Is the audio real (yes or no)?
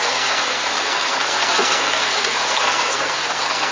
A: no